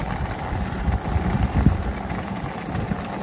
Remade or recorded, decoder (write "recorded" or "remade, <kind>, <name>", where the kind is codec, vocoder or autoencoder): recorded